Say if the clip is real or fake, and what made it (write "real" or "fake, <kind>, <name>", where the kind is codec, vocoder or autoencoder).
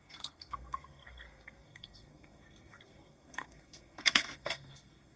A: fake, codec, SNAC